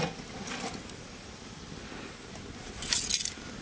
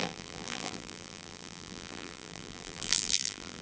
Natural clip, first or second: first